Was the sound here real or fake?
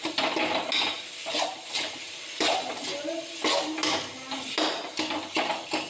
real